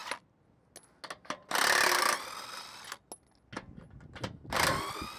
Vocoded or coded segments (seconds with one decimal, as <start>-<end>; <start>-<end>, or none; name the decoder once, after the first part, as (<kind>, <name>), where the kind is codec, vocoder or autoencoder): none